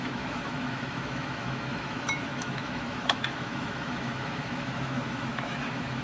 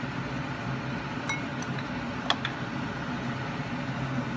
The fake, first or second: first